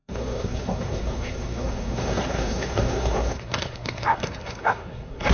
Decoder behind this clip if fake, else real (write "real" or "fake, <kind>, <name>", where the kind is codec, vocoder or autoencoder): fake, codec, SNAC